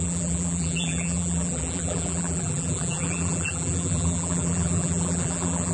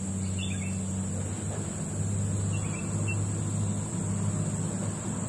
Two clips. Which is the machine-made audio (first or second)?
first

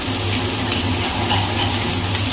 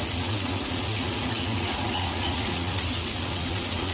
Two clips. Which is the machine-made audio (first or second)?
second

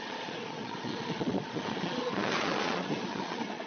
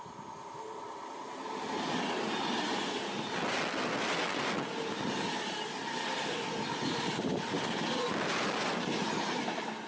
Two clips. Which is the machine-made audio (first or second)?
first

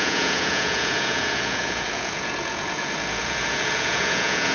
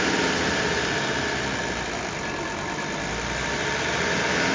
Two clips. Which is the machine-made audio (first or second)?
first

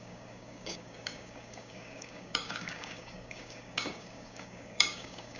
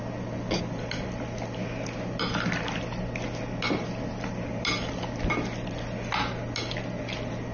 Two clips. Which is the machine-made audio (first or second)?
first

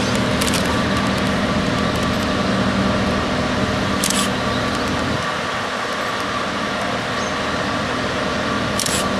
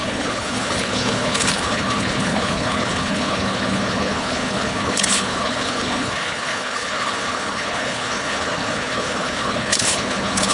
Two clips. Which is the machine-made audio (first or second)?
second